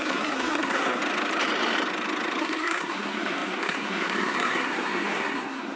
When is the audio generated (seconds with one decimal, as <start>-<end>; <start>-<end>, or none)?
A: 0.0-1.0; 2.4-5.8